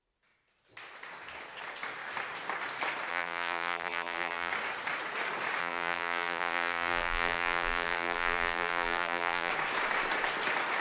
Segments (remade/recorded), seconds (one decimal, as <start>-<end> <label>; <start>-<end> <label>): 0.0-3.1 recorded; 3.1-4.5 remade; 4.5-5.6 recorded; 5.6-9.5 remade; 9.5-10.8 recorded